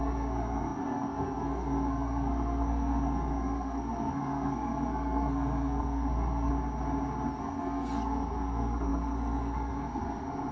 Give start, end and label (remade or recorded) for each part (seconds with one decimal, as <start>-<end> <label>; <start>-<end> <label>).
0.0-6.5 remade; 6.5-7.4 recorded; 7.4-10.5 remade